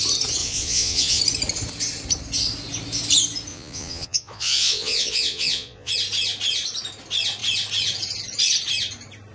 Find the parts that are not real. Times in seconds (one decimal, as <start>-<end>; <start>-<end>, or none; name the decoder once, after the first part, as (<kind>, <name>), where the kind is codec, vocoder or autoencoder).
0.4-1.2 (vocoder, Vocos); 3.5-5.9